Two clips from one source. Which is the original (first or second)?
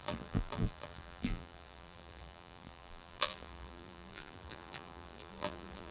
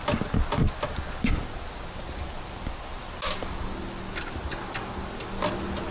second